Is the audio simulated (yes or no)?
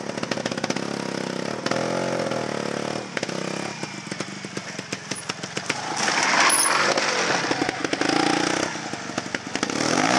no